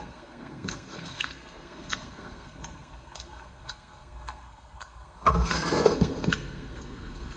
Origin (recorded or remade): remade